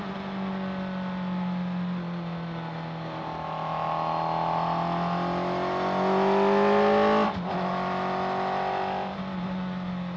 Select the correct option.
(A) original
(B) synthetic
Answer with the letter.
A